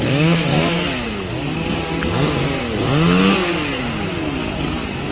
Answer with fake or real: real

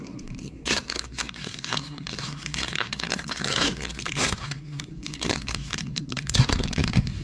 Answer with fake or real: fake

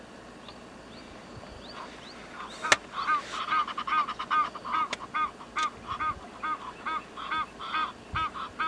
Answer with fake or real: real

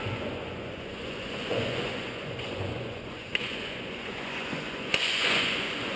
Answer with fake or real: fake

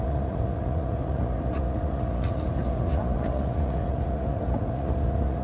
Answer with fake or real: fake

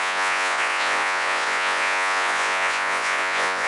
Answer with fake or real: fake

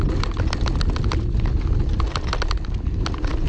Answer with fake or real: real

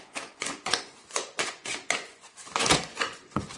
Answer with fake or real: fake